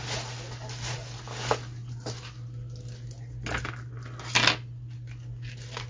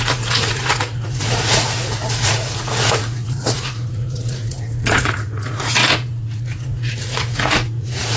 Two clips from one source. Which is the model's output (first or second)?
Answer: second